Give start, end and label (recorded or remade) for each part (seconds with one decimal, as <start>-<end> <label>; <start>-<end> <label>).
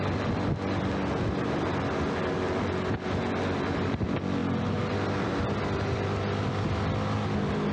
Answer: 0.0-7.7 recorded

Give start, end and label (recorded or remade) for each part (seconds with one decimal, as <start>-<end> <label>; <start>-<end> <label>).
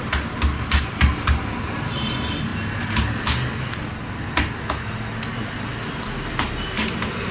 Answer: 0.0-7.3 recorded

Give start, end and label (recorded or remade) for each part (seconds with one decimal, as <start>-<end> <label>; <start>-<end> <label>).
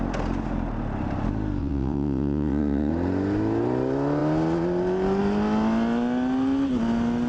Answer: 0.0-1.6 recorded; 1.6-2.9 remade; 2.9-7.3 recorded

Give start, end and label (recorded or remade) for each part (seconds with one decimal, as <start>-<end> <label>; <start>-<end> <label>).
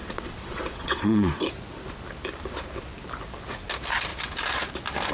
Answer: 0.0-1.5 remade; 1.5-5.1 recorded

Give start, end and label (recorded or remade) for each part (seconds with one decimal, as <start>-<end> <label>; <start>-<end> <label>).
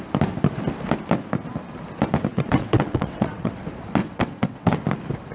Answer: 0.0-2.3 recorded; 2.3-3.6 remade; 3.6-4.0 recorded; 4.0-4.8 remade; 4.8-5.3 recorded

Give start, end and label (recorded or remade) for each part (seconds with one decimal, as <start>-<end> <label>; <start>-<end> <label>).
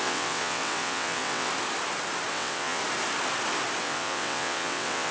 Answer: 0.0-1.5 remade; 1.5-2.3 recorded; 2.3-2.8 remade; 2.8-3.8 recorded; 3.8-5.1 remade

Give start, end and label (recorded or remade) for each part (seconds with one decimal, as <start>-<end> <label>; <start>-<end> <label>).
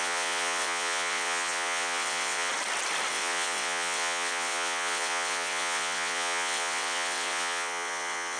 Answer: 0.0-2.5 remade; 2.5-3.1 recorded; 3.1-8.4 remade